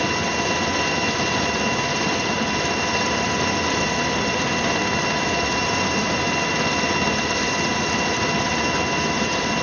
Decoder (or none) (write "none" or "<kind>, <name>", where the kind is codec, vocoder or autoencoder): none